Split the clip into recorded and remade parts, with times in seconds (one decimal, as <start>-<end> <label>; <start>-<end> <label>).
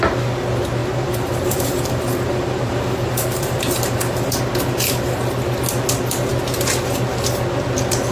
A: 0.0-0.8 recorded; 0.8-4.4 remade; 4.4-8.1 recorded